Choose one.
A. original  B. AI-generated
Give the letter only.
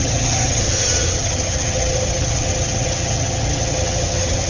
B